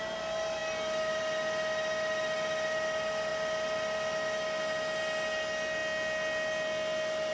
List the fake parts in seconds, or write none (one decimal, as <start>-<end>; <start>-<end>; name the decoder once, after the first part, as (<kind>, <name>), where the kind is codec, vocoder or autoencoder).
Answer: none